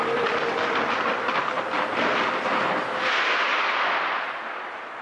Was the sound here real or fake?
real